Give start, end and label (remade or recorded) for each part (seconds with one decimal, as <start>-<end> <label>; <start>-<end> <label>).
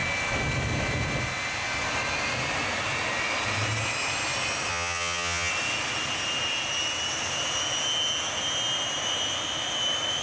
0.0-4.7 recorded; 4.7-5.5 remade; 5.5-10.2 recorded